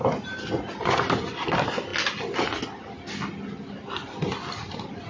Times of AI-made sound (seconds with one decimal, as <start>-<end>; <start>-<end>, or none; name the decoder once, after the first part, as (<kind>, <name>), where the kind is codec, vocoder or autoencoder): none